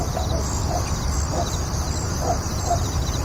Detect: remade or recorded recorded